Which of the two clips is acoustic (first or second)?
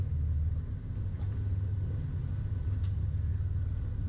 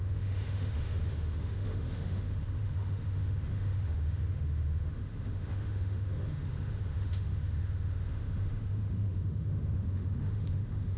first